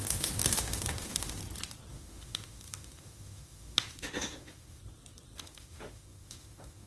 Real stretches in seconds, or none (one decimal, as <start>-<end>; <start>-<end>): 1.4-1.9; 4.8-5.4